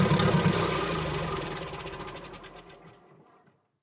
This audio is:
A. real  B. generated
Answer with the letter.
A